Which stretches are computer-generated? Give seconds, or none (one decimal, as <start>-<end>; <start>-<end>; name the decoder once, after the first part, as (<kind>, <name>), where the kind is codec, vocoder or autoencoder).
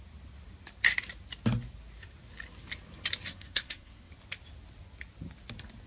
3.3-4.1 (codec, SNAC)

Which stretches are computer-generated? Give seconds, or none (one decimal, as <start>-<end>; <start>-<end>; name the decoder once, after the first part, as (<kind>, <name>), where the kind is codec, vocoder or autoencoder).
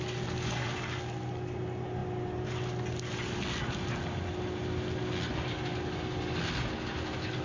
none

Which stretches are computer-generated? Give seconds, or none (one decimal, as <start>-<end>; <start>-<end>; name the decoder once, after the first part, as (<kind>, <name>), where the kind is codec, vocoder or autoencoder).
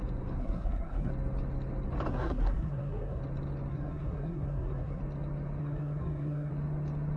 0.4-1.1 (codec, SNAC); 2.1-3.2; 3.7-5.0; 5.6-6.5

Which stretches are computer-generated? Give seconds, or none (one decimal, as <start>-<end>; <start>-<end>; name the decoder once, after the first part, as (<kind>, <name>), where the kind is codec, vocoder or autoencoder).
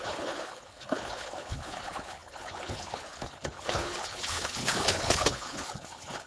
0.0-6.3 (codec, HILCodec)